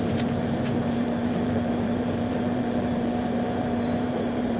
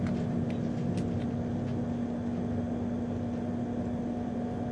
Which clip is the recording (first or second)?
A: second